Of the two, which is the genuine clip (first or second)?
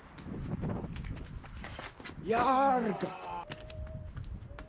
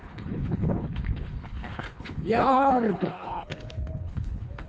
first